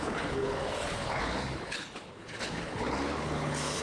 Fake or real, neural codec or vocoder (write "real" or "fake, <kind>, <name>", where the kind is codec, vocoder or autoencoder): fake, codec, HILCodec